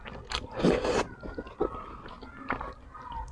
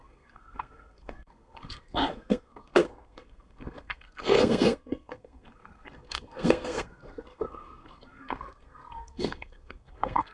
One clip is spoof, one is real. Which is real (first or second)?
first